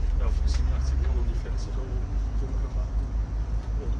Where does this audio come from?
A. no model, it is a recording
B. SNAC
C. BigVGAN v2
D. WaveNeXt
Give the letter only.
A